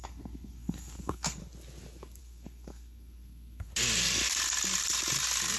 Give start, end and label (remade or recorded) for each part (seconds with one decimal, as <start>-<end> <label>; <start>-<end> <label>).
0.0-1.4 remade; 1.4-2.2 recorded; 2.2-3.7 remade; 3.7-5.6 recorded